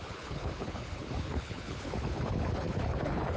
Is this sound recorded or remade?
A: remade